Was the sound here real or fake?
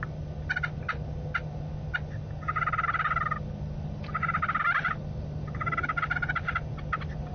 real